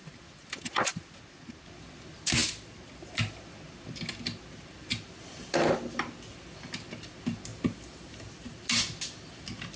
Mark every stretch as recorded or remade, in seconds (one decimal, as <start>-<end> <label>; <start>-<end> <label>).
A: 0.0-9.8 recorded